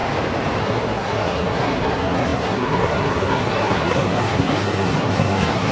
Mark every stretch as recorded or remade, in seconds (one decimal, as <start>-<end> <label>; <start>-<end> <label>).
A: 0.0-0.6 recorded; 0.6-5.7 remade